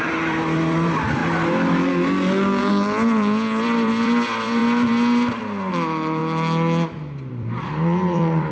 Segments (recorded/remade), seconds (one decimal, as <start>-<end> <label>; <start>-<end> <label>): 0.0-1.2 remade; 1.2-2.7 recorded; 2.7-4.6 remade; 4.6-5.7 recorded; 5.7-6.2 remade; 6.2-7.3 recorded; 7.3-8.5 remade